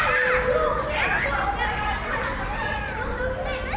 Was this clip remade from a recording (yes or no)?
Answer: no